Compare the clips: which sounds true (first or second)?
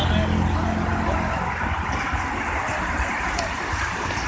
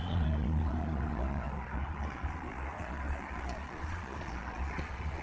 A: first